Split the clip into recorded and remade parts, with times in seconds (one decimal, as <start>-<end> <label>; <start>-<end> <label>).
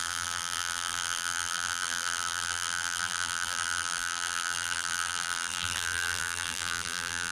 0.0-7.3 remade